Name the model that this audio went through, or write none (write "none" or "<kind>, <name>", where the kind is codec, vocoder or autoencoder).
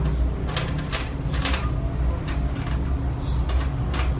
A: none